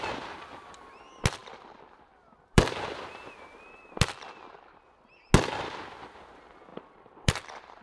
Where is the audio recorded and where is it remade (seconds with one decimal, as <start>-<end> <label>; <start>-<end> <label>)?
0.0-1.4 recorded; 1.4-3.0 remade; 3.0-6.7 recorded; 6.7-7.8 remade